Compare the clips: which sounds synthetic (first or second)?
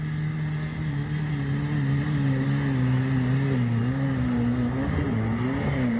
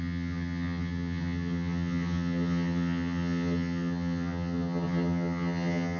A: second